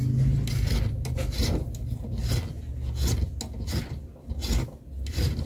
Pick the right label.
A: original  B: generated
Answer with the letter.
A